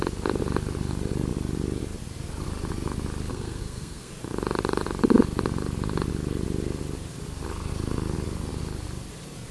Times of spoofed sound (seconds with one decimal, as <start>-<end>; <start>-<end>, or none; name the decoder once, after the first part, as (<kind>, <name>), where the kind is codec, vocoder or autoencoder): 3.3-4.1 (codec, SNAC)